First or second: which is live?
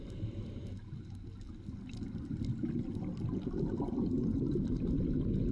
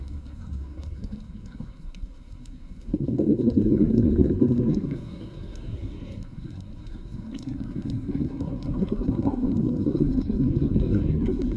first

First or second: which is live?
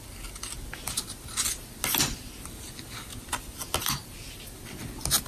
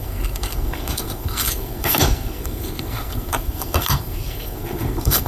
first